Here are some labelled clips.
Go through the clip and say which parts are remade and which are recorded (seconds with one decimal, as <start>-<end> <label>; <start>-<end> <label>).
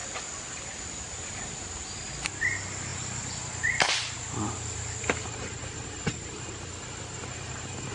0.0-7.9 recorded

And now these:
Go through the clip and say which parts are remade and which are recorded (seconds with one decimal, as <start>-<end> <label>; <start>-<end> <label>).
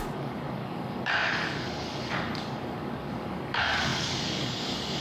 0.0-5.0 remade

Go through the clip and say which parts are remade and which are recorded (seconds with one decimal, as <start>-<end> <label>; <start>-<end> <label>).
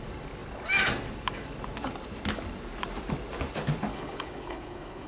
0.0-3.9 recorded; 3.9-5.1 remade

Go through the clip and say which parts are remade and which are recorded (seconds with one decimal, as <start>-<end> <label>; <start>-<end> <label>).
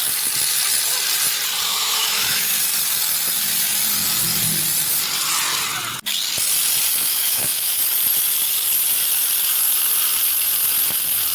0.0-1.7 recorded; 1.7-2.5 remade; 2.5-7.1 recorded; 7.1-7.8 remade; 7.8-11.3 recorded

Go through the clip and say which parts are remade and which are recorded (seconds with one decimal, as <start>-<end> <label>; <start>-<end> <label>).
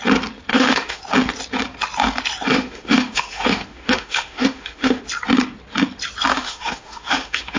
0.0-0.5 recorded; 0.5-1.0 remade; 1.0-2.5 recorded; 2.5-5.0 remade; 5.0-6.3 recorded; 6.3-7.6 remade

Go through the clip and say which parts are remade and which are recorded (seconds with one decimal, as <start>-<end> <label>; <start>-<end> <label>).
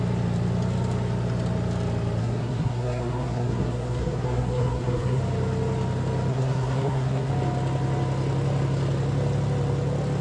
0.0-2.2 recorded; 2.2-5.2 remade; 5.2-6.3 recorded; 6.3-7.3 remade; 7.3-10.2 recorded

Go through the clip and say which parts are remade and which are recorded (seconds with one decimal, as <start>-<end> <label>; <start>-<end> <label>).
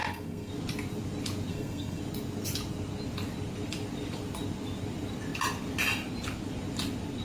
0.0-0.5 remade; 0.5-1.5 recorded; 1.5-2.0 remade; 2.0-7.2 recorded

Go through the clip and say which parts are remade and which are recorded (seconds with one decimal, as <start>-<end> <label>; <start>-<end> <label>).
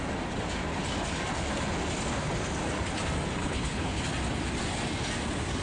0.0-3.4 recorded; 3.4-4.0 remade; 4.0-5.6 recorded